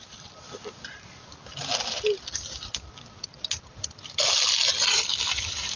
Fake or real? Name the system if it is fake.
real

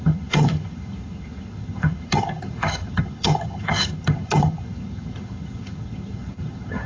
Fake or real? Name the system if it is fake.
fake, vocoder, HiFi-GAN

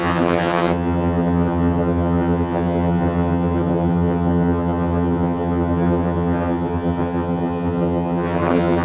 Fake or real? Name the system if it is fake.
fake, vocoder, HiFi-GAN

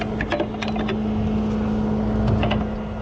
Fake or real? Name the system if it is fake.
real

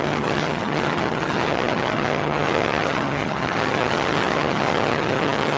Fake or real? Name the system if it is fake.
fake, vocoder, HiFi-GAN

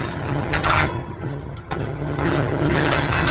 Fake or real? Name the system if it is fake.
fake, vocoder, HiFi-GAN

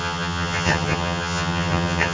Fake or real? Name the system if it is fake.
fake, vocoder, HiFi-GAN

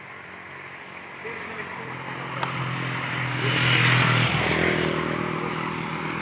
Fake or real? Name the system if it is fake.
real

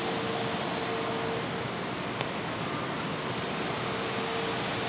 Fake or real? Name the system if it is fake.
real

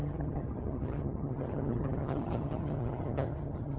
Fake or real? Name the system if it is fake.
fake, vocoder, HiFi-GAN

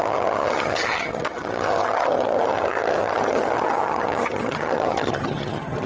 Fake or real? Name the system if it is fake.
fake, vocoder, HiFi-GAN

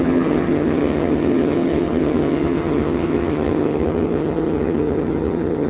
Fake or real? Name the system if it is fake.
fake, vocoder, HiFi-GAN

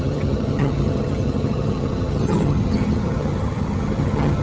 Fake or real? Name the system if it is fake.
fake, vocoder, HiFi-GAN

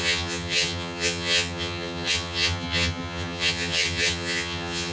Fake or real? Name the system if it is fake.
fake, vocoder, HiFi-GAN